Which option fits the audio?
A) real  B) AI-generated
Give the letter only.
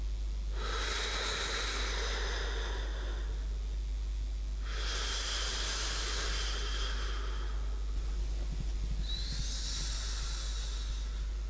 A